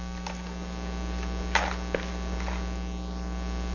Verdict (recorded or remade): recorded